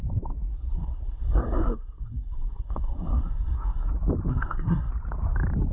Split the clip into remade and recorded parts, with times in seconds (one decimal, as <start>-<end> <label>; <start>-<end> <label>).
0.0-0.5 recorded; 0.5-3.9 remade; 3.9-4.3 recorded; 4.3-4.9 remade; 4.9-5.7 recorded

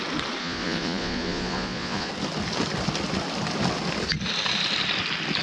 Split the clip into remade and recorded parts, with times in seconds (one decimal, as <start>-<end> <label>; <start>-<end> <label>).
0.0-0.4 recorded; 0.4-2.1 remade; 2.1-5.4 recorded

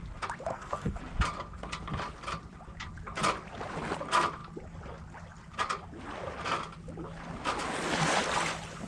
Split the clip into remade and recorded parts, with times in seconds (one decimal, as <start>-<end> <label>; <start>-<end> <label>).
0.0-0.5 recorded; 0.5-1.0 remade; 1.0-8.9 recorded

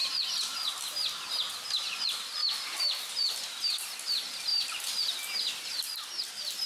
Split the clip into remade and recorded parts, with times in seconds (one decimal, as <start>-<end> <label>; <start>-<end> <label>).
0.0-6.7 recorded

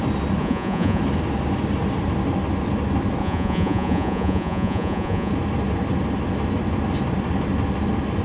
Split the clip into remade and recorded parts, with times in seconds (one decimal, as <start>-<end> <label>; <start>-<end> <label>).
0.0-0.4 recorded; 0.4-1.0 remade; 1.0-3.2 recorded; 3.2-5.3 remade; 5.3-8.2 recorded

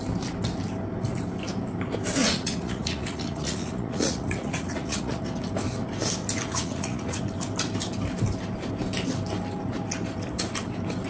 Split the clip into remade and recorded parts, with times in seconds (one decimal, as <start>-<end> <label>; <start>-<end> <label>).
0.0-2.2 recorded; 2.2-5.2 remade; 5.2-6.5 recorded; 6.5-7.2 remade; 7.2-11.1 recorded

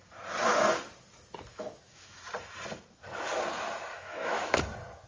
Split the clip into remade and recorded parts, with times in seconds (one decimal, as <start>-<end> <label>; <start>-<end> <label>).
0.0-1.5 recorded; 1.5-2.2 remade; 2.2-3.9 recorded; 3.9-4.6 remade; 4.6-5.1 recorded

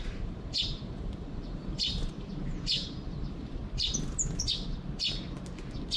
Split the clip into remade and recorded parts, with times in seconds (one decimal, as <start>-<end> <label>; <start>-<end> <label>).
0.0-3.6 remade; 3.6-6.0 recorded